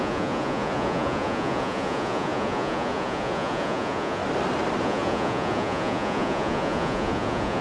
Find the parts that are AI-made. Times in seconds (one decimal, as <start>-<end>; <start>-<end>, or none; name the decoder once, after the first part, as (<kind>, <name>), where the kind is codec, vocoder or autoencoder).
0.0-4.2 (vocoder, Vocos); 4.8-7.6